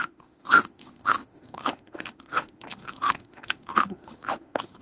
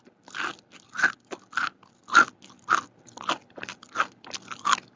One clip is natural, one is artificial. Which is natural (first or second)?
second